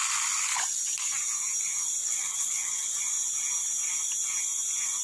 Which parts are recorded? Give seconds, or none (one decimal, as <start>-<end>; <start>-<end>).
0.0-2.0; 3.0-5.0